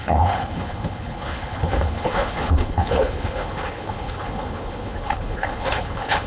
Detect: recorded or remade remade